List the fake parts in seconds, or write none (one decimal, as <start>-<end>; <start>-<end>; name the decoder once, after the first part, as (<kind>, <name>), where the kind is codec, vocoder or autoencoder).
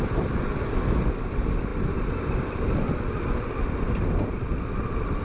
none